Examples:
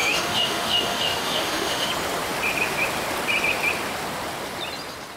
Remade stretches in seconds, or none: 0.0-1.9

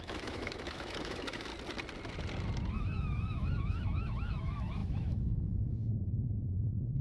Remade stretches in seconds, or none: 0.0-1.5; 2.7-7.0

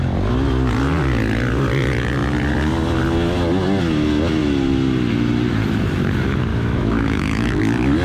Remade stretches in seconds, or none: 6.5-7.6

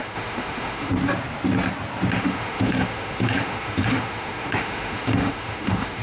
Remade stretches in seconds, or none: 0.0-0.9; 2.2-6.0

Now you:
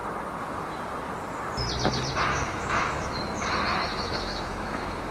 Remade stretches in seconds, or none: 2.3-3.5; 3.9-5.1

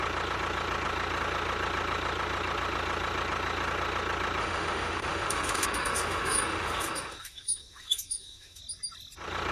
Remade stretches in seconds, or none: 4.4-8.6